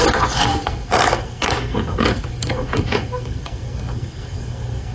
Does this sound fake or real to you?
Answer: fake